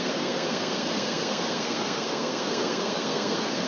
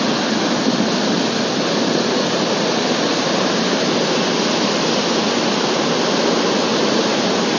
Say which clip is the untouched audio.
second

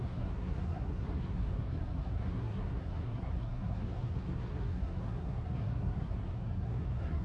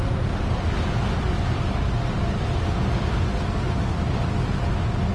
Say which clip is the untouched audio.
second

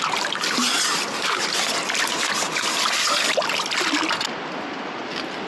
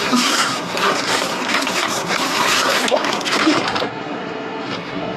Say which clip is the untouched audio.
first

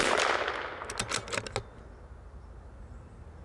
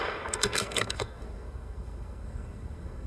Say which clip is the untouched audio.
first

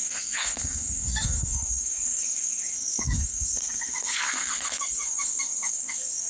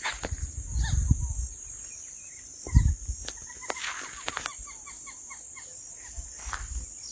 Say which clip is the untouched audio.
second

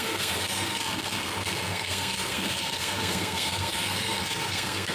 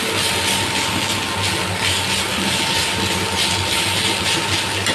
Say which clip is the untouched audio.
second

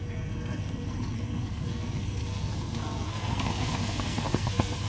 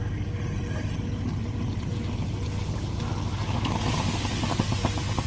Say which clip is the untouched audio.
second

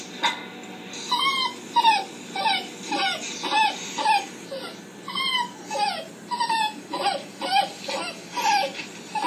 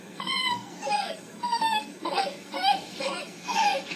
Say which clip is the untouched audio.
first